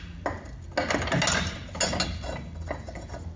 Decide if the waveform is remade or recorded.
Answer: recorded